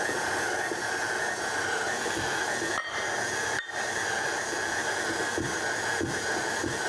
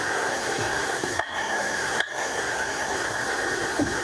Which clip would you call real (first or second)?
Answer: first